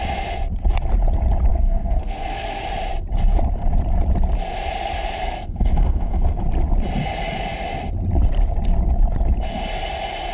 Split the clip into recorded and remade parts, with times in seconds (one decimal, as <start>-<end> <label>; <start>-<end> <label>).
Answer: 0.0-1.5 recorded; 1.5-2.6 remade; 2.6-5.2 recorded; 5.2-6.4 remade; 6.4-10.3 recorded